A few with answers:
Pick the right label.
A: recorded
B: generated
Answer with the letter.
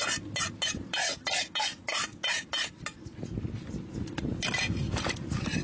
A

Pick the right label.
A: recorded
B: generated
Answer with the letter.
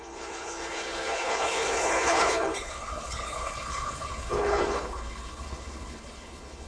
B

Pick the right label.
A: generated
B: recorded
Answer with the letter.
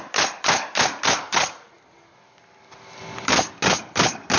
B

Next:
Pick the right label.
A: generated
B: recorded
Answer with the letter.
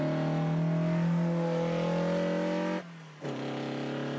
B